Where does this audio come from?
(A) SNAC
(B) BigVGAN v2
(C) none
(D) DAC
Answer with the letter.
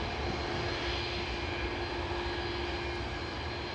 C